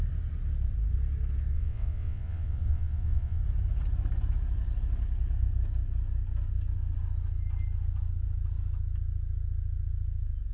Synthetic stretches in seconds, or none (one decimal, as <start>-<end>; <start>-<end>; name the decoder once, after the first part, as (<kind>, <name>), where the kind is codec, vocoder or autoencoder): 1.5-3.4 (vocoder, WaveNeXt)